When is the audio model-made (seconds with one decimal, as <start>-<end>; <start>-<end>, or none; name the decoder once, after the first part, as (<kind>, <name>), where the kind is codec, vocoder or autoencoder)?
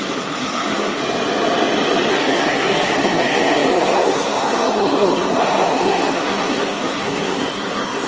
0.0-1.0 (codec, SNAC); 2.1-8.1